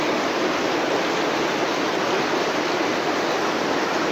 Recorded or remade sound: recorded